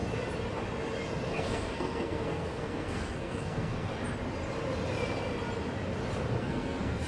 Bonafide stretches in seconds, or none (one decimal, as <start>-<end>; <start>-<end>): 0.0-1.3; 3.9-6.4